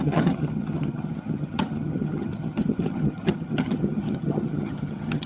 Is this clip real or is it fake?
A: fake